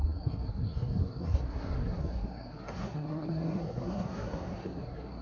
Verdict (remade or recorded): remade